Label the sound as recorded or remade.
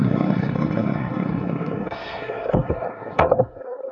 remade